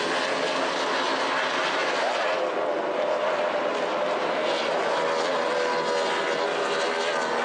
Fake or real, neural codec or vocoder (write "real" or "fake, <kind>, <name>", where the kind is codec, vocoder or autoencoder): real